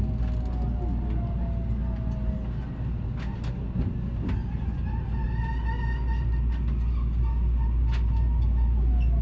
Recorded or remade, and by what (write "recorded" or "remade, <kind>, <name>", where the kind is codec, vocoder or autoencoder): recorded